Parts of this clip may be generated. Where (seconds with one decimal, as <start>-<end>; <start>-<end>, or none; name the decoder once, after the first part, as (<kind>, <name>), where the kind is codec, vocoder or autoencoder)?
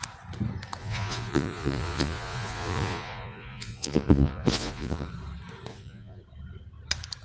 0.8-5.1 (vocoder, Vocos); 5.7-6.2